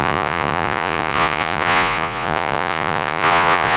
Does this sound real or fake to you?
fake